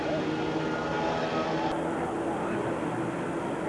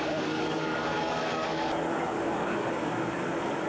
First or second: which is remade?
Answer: second